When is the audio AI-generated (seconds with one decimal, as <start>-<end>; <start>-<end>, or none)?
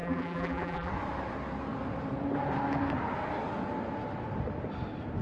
0.0-0.9